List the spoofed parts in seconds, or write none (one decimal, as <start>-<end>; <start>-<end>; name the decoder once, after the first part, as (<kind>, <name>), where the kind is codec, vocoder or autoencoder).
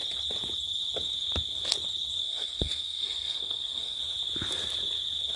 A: 2.2-4.0 (codec, SNAC)